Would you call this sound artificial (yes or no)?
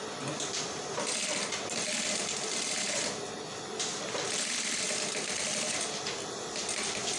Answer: no